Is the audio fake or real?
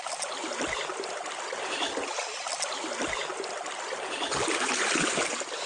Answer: real